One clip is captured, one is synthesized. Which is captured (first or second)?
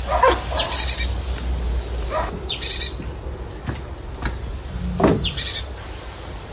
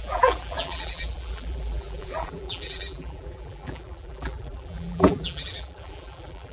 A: first